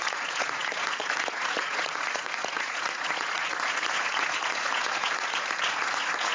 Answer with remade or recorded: remade